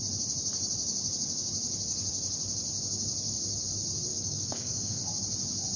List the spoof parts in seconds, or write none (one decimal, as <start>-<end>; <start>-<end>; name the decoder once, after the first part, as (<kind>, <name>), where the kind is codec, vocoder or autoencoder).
4.1-4.9 (codec, DAC)